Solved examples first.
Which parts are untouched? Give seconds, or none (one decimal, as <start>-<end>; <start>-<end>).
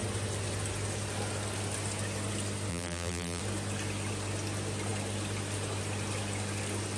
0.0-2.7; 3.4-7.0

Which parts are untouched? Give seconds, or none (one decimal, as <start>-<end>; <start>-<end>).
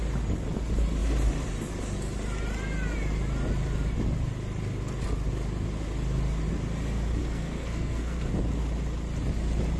0.0-7.2; 8.3-9.8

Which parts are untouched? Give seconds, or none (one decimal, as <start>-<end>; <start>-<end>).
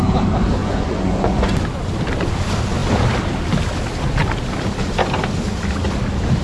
0.0-0.6; 1.5-6.4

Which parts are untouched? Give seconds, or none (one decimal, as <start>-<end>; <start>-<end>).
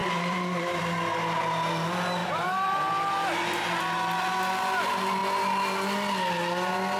0.8-2.2; 3.8-7.0